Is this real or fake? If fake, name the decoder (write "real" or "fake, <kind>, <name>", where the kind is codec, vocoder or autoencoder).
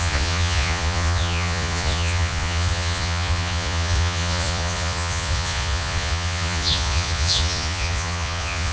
fake, vocoder, Vocos